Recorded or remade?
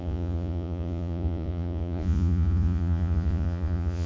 remade